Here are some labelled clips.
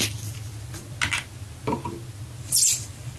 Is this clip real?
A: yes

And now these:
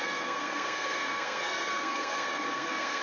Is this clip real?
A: no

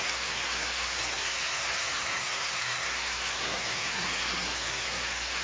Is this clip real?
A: no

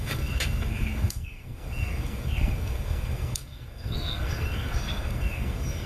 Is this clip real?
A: no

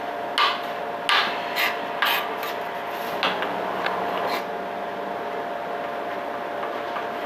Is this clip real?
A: yes